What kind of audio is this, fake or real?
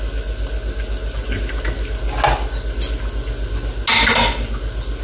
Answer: real